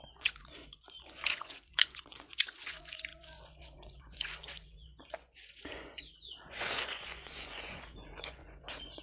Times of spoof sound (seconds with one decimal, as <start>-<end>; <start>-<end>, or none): 0.0-9.0